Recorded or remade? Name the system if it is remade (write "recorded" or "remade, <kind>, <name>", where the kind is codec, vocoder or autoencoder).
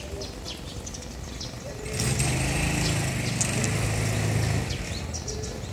recorded